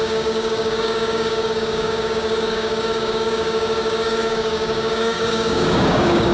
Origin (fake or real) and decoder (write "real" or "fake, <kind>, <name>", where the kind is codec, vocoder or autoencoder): fake, codec, DAC